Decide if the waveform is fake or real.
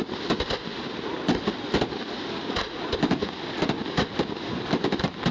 real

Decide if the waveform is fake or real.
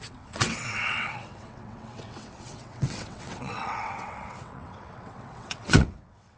fake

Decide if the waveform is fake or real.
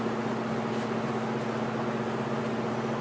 real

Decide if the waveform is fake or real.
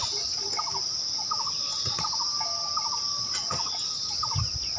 real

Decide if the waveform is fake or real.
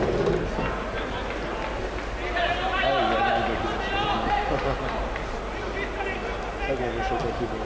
real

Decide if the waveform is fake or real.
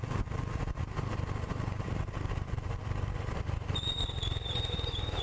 fake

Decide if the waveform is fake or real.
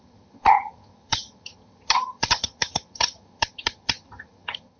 fake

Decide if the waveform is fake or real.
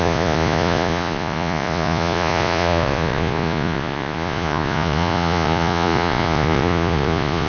fake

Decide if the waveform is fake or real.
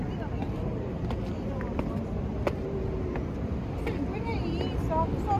real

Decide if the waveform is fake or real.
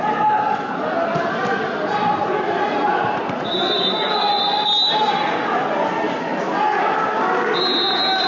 real